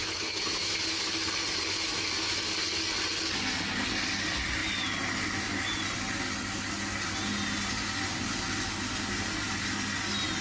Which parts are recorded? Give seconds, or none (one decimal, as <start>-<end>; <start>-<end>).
0.7-10.4